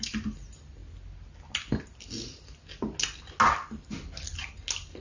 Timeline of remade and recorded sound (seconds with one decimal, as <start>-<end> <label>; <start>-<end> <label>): 0.0-0.8 remade; 0.8-3.8 recorded; 3.8-5.0 remade